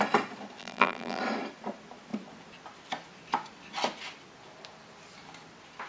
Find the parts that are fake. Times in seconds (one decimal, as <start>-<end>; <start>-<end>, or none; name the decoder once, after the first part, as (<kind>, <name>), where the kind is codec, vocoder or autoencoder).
0.6-1.2 (vocoder, BigVGAN v2)